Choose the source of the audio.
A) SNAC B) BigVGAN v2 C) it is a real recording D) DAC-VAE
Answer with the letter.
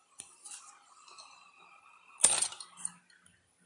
C